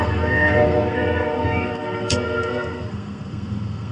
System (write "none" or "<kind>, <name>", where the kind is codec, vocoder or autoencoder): codec, SNAC